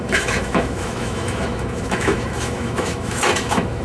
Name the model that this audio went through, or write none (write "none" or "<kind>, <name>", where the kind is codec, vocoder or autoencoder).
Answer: autoencoder, DAC-VAE